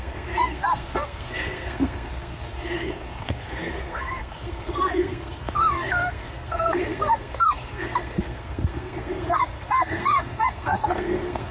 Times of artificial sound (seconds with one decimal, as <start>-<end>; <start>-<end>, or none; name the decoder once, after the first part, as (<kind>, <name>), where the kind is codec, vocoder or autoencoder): 0.0-11.5 (codec, SNAC)